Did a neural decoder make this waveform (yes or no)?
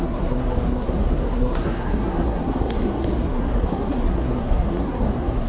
yes